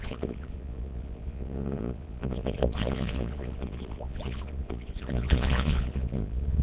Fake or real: fake